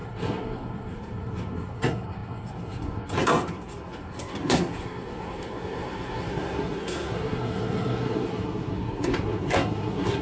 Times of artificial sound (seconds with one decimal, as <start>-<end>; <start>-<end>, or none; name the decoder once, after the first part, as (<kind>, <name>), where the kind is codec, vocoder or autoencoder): 0.0-10.2 (codec, SNAC)

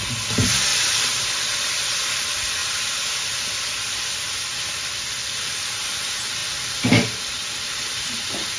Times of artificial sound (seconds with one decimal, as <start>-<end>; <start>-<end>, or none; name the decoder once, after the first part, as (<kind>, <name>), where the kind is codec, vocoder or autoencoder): none

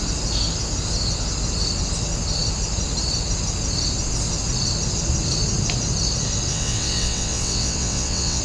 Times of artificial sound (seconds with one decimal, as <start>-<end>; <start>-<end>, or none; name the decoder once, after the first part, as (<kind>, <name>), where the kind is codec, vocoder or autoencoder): 6.5-8.4 (vocoder, WaveNeXt)

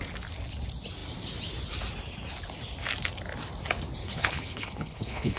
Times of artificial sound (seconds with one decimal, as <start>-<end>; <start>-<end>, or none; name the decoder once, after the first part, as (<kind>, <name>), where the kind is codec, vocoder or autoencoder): 4.0-5.4 (codec, HILCodec)

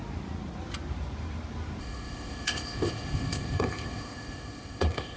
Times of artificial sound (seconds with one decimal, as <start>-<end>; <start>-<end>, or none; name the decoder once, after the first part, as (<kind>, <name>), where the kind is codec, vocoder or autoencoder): 1.8-5.2 (codec, ZipCodec)

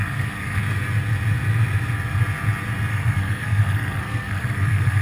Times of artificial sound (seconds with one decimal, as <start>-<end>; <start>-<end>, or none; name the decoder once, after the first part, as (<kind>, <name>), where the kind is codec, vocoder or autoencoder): 0.0-0.6 (codec, SNAC); 2.9-5.0